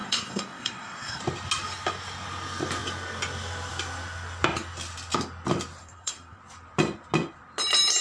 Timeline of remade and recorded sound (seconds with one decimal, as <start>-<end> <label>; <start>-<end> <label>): 0.0-1.2 remade; 1.2-5.8 recorded; 5.8-6.4 remade; 6.4-8.0 recorded